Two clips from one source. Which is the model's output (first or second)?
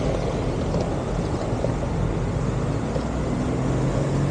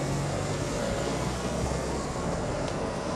second